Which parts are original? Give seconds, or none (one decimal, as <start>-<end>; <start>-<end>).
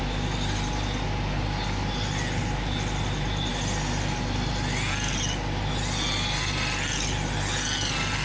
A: 0.0-8.2